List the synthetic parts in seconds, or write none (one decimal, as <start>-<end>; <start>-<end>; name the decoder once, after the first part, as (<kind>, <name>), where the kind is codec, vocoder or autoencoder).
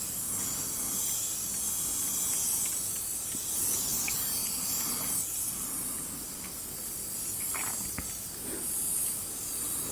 none